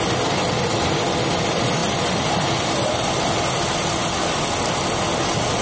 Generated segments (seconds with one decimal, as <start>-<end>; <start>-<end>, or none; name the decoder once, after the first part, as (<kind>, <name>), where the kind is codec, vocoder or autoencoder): none